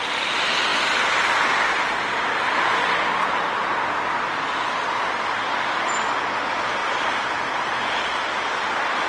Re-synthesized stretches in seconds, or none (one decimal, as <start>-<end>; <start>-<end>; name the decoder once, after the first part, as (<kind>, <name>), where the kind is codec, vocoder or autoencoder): none